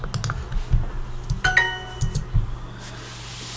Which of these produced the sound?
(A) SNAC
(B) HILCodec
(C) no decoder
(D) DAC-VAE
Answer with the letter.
C